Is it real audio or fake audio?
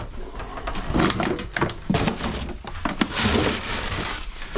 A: real